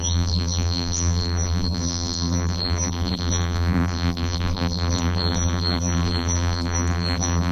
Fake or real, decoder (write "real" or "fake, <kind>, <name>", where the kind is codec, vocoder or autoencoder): fake, vocoder, BigVGAN v2